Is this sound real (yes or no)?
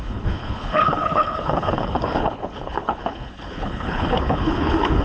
no